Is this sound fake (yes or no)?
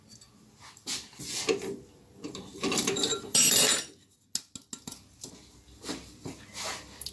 no